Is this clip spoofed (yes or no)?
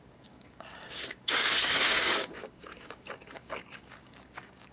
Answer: yes